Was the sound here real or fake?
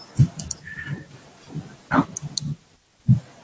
real